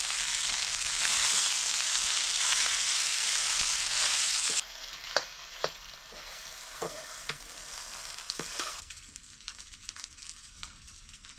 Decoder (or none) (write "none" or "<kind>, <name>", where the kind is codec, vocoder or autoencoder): codec, SNAC